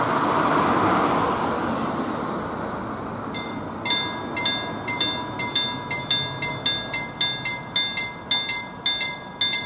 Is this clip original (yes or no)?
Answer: yes